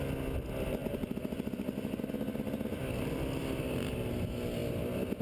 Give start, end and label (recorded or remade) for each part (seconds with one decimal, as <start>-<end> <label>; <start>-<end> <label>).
0.0-5.2 recorded